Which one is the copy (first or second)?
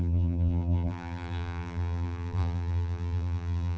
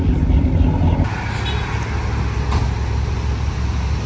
first